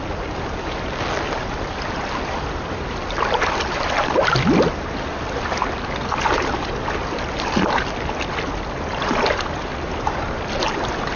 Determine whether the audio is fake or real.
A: real